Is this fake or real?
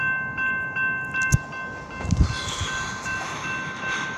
real